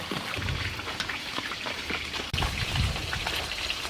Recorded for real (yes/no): no